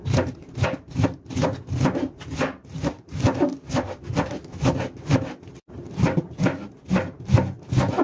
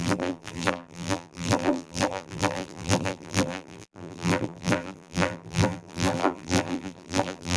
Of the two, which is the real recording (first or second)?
first